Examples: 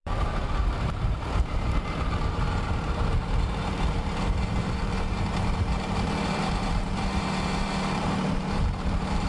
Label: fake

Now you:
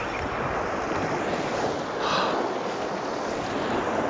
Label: real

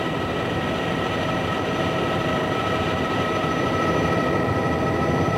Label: fake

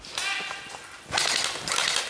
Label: real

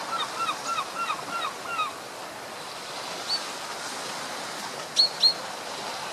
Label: real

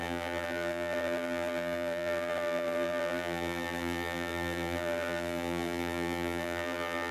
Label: fake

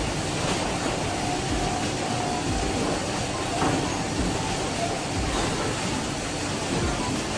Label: real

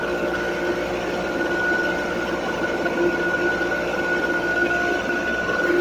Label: fake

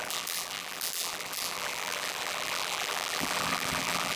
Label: fake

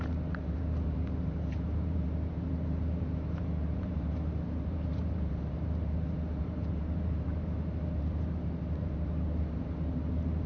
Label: fake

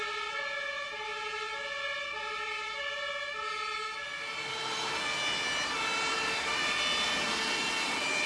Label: real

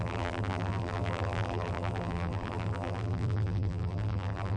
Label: fake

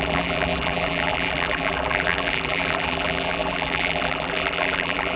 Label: fake